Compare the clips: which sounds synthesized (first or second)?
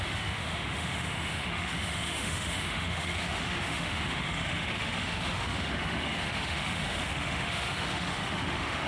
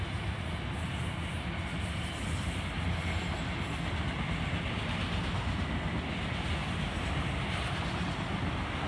first